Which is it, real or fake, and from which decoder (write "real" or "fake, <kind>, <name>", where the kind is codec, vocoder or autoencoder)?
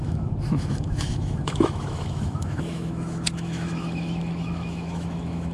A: fake, autoencoder, DAC-VAE